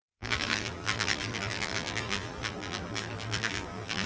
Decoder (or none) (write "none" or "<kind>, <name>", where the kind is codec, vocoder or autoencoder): vocoder, BigVGAN v2